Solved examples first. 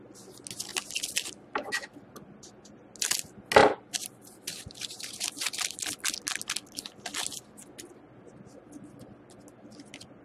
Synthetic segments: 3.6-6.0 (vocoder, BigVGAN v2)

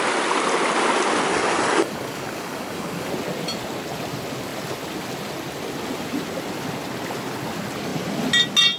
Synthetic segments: 1.3-3.1 (codec, DAC)